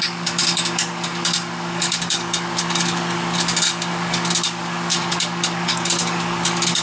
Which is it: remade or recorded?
remade